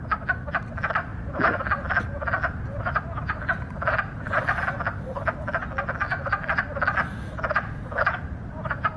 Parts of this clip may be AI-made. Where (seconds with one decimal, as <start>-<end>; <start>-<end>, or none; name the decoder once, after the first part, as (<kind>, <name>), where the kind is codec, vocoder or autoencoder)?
none